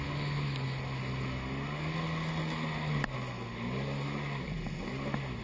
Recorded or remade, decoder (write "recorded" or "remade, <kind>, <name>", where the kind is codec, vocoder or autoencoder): recorded